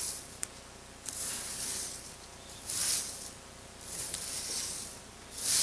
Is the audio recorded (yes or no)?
no